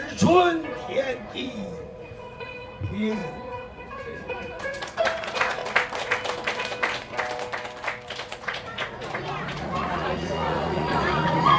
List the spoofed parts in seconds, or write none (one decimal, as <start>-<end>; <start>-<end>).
0.0-5.6; 8.2-11.6